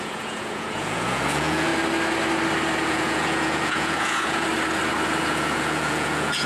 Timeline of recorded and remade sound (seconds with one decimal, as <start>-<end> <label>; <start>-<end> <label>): 0.0-1.7 remade; 1.7-2.9 recorded; 2.9-4.5 remade; 4.5-5.2 recorded; 5.2-6.5 remade